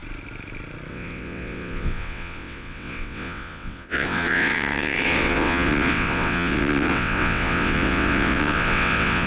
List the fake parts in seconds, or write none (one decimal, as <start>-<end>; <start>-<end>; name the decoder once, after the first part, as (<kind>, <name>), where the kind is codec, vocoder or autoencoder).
0.9-9.3 (vocoder, WaveNeXt)